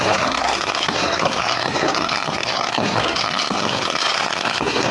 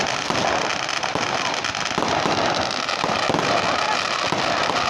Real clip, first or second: second